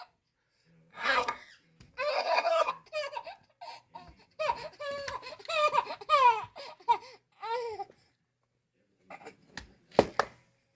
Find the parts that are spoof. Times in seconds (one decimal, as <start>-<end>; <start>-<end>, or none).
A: 0.9-1.5; 2.1-2.7